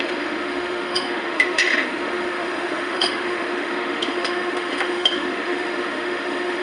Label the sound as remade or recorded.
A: remade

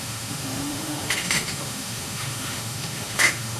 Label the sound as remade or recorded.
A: remade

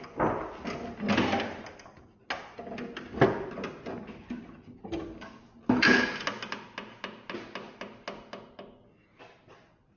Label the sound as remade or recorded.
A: recorded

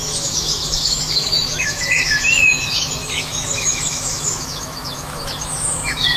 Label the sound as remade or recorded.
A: remade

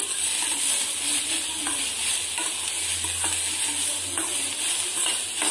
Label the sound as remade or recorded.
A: recorded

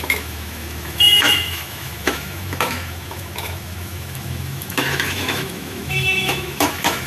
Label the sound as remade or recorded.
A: remade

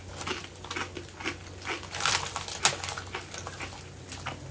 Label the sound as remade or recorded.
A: recorded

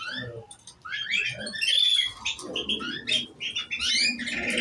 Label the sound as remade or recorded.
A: recorded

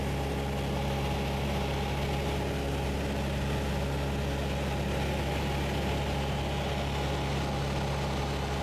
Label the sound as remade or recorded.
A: recorded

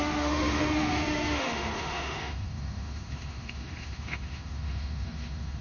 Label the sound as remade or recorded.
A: remade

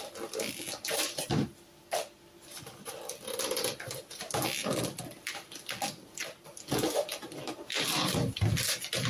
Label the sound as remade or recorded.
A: recorded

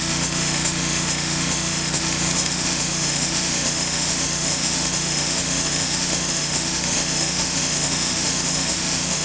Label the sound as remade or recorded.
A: remade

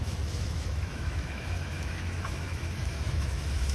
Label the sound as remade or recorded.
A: remade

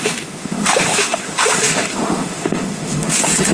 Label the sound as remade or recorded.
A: remade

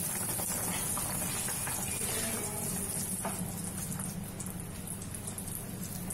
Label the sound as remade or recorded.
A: recorded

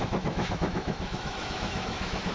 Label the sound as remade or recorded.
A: remade